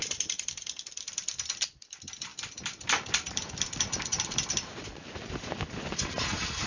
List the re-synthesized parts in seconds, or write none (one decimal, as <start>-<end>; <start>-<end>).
0.0-6.7